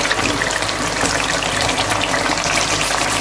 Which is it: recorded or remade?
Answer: remade